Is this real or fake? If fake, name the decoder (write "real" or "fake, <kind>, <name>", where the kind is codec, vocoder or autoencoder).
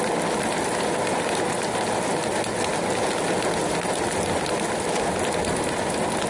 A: real